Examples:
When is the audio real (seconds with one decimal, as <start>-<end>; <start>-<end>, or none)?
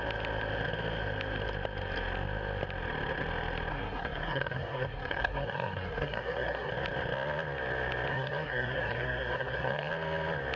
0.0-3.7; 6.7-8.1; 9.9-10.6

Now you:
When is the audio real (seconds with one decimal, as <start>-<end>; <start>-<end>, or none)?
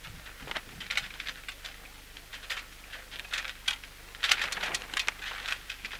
0.0-6.0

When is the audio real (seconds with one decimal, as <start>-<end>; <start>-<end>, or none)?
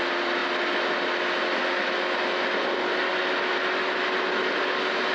0.0-5.1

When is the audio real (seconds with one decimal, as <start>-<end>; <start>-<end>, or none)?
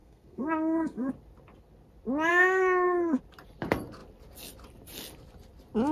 1.1-2.3; 3.2-5.9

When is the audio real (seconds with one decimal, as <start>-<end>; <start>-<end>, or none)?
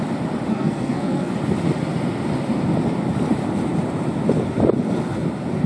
0.0-0.5; 1.3-5.7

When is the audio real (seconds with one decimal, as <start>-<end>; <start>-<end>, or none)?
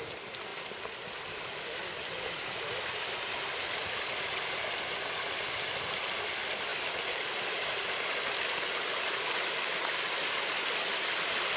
0.0-0.5; 1.8-6.7; 7.5-11.6